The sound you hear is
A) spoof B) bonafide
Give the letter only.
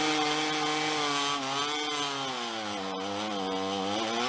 B